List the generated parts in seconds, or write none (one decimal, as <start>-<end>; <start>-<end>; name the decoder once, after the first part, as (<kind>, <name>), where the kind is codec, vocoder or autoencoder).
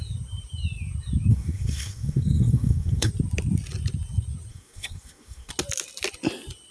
1.3-3.1 (codec, SNAC); 4.5-5.5